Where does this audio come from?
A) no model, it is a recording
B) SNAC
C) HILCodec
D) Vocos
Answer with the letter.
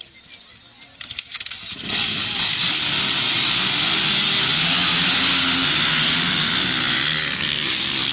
A